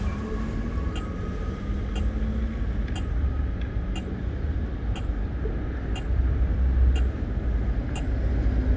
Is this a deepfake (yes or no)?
no